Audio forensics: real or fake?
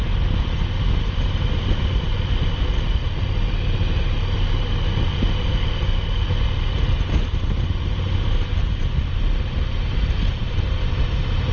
real